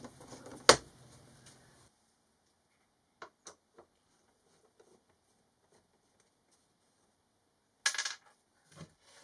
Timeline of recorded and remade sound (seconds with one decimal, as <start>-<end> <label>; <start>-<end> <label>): 0.0-9.2 recorded